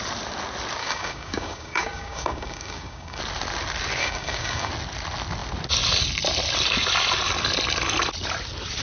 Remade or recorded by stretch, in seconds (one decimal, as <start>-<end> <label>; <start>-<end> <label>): 0.0-0.8 recorded; 0.8-3.2 remade; 3.2-4.0 recorded; 4.0-4.7 remade; 4.7-8.8 recorded